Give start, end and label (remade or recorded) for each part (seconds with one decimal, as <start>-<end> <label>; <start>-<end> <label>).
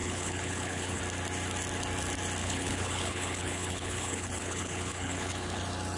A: 0.0-1.0 remade; 1.0-2.4 recorded; 2.4-5.6 remade; 5.6-6.0 recorded